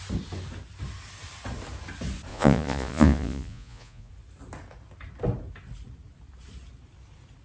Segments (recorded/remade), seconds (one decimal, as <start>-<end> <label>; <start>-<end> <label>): 0.0-2.3 recorded; 2.3-4.1 remade; 4.1-7.4 recorded